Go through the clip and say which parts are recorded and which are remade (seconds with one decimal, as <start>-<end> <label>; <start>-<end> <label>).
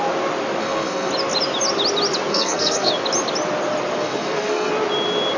0.0-0.6 recorded; 0.6-1.1 remade; 1.1-2.3 recorded; 2.3-2.9 remade; 2.9-4.0 recorded; 4.0-4.7 remade; 4.7-5.4 recorded